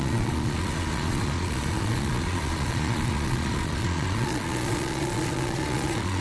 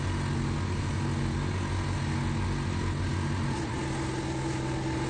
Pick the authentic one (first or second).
second